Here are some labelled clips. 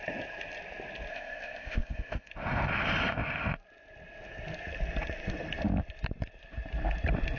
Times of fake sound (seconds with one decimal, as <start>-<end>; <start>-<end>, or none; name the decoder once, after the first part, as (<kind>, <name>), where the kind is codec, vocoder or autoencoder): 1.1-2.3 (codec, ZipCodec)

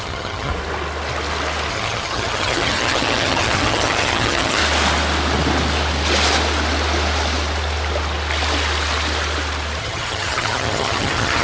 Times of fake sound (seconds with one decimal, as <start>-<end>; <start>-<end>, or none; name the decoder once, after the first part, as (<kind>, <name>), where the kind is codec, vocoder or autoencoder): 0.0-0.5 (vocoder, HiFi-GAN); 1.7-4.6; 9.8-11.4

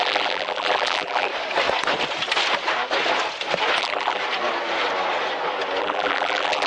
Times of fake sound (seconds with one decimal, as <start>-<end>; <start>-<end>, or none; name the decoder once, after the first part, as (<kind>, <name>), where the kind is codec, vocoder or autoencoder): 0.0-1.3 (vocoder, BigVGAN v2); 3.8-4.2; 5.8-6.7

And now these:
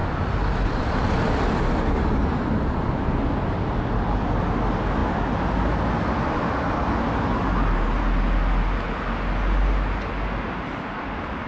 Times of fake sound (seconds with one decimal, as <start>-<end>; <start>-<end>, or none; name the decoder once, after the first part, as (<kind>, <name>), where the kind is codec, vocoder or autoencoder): none